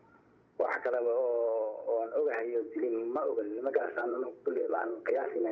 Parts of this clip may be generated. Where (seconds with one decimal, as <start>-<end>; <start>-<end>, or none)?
0.0-0.7; 3.7-5.5